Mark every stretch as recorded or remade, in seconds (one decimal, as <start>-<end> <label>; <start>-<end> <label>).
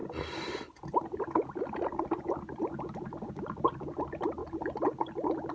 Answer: 0.0-3.3 recorded; 3.3-4.4 remade; 4.4-5.5 recorded